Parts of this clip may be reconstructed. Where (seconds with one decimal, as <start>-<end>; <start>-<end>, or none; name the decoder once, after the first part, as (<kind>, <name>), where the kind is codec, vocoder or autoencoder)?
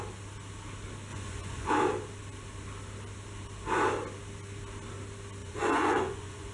1.1-1.7 (vocoder, Vocos); 5.4-6.5